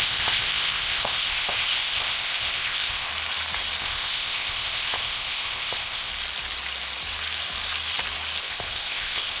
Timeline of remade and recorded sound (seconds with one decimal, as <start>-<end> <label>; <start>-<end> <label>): 0.0-3.1 remade; 3.1-3.8 recorded; 3.8-6.1 remade; 6.1-8.4 recorded; 8.4-9.4 remade